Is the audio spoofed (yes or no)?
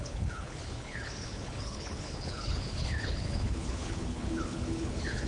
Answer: yes